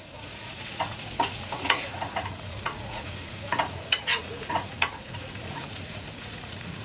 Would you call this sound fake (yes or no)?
yes